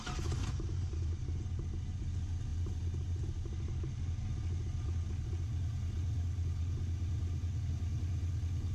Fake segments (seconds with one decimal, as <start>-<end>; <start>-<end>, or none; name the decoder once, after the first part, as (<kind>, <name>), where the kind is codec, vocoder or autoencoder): none